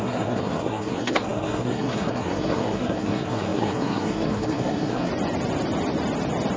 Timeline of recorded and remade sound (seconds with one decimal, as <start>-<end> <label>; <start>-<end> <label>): 0.0-5.1 remade; 5.1-6.6 recorded